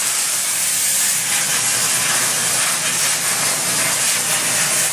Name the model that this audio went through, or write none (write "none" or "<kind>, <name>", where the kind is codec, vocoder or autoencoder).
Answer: none